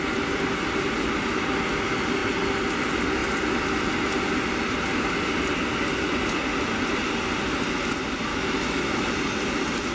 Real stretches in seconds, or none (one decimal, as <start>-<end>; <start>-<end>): 0.0-8.3; 9.1-9.9